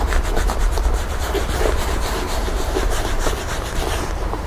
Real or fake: fake